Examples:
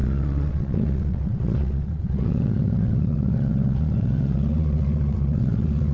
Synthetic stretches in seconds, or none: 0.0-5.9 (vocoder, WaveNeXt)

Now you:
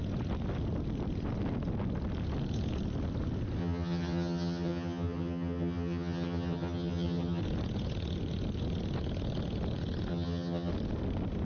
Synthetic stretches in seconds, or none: 3.6-7.4 (vocoder, HiFi-GAN); 10.1-10.7

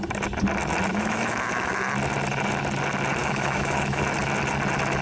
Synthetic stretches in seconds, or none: 0.9-1.9 (autoencoder, DAC-VAE); 3.2-4.0

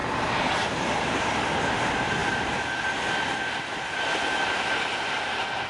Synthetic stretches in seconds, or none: 0.0-1.2 (vocoder, BigVGAN v2)

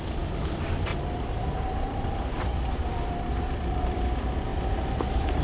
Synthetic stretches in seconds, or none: 0.0-0.9 (vocoder, BigVGAN v2); 3.3-4.5; 5.0-5.4

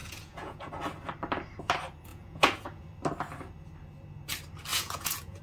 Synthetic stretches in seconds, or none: 0.0-0.7 (vocoder, Vocos); 2.1-2.8; 4.7-5.4

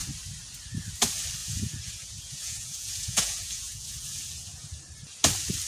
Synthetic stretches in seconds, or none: 1.4-4.8 (vocoder, Vocos)